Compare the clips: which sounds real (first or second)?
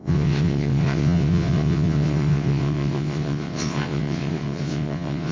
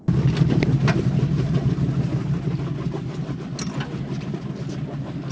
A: second